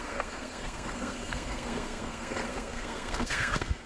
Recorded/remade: remade